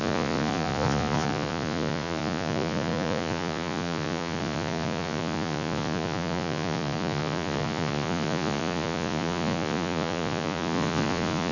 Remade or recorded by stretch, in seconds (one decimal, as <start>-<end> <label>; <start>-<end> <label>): 0.0-11.5 remade